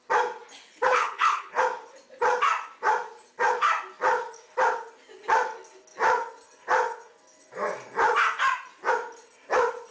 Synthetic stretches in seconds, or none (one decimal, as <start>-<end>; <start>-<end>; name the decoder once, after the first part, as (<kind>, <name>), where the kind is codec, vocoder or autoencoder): 0.6-1.6 (codec, HILCodec)